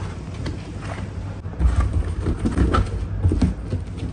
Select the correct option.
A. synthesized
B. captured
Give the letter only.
B